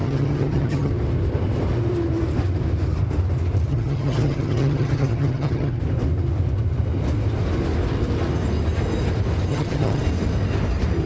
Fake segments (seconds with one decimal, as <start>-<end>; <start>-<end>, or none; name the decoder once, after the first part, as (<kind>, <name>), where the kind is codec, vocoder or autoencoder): 0.0-0.9 (vocoder, HiFi-GAN); 3.7-5.8; 9.5-10.0